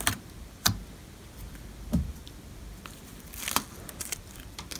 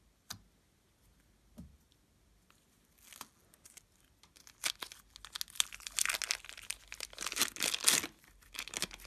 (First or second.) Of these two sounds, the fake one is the first